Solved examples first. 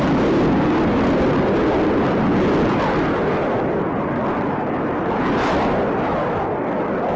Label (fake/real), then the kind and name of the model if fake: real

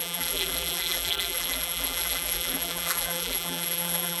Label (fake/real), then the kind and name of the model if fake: fake, vocoder, BigVGAN v2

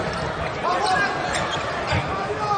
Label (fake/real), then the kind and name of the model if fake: real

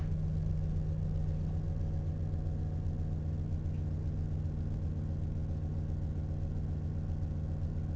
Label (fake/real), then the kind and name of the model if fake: real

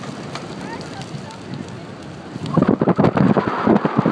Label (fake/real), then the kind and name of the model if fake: real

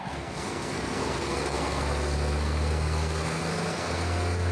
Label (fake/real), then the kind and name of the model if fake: fake, codec, SNAC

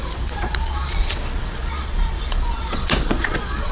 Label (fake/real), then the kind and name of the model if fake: fake, vocoder, Vocos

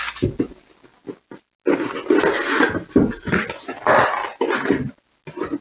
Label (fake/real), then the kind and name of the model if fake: real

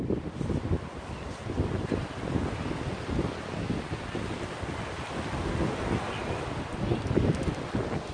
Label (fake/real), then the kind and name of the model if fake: real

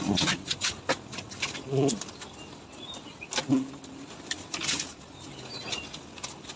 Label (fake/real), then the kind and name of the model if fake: real